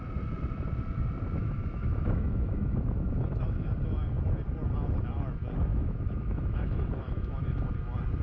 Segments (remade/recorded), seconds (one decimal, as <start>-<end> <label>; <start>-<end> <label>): 0.0-1.4 recorded; 1.4-3.7 remade; 3.7-5.7 recorded; 5.7-7.6 remade; 7.6-8.2 recorded